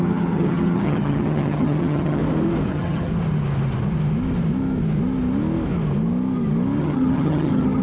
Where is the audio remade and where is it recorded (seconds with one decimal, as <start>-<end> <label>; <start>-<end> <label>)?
0.0-2.2 remade; 2.2-2.7 recorded; 2.7-3.1 remade; 3.1-6.8 recorded; 6.8-7.8 remade